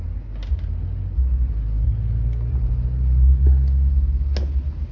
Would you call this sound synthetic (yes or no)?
no